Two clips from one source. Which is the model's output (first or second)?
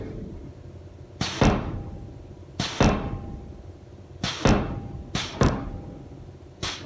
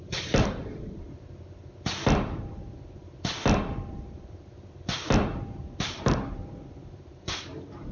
second